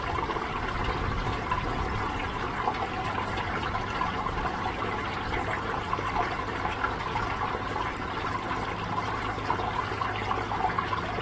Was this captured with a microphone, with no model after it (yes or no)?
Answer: yes